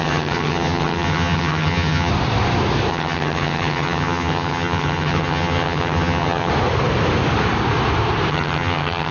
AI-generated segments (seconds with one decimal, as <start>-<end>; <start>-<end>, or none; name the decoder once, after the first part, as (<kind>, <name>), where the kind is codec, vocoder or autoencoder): 0.0-2.1 (vocoder, HiFi-GAN); 2.9-6.5; 8.3-9.1